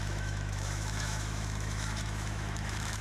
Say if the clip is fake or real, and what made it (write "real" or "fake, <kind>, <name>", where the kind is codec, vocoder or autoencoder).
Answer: fake, autoencoder, DAC-VAE